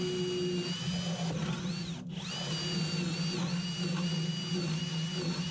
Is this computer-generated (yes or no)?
no